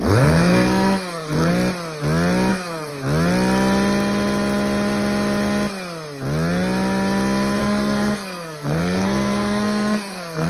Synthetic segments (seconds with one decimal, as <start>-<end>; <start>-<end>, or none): 0.0-1.5; 2.5-2.9; 7.6-10.5